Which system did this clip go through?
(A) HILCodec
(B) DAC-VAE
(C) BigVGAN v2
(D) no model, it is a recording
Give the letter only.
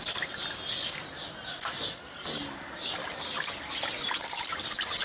D